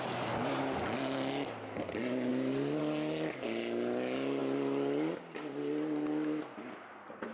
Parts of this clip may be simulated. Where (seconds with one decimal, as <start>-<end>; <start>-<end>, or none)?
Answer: none